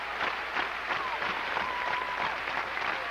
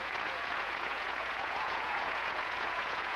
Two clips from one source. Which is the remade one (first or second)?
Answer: second